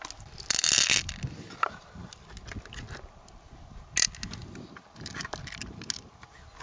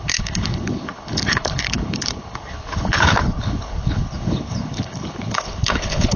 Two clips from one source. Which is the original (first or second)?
first